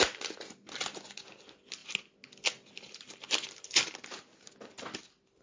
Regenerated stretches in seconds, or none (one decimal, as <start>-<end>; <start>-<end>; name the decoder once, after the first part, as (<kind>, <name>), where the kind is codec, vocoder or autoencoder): none